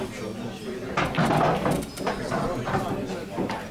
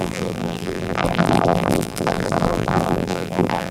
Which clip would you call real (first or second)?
first